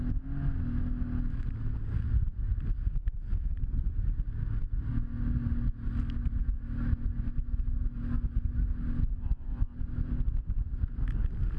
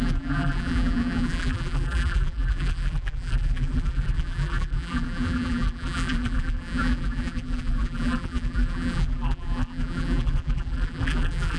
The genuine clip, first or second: first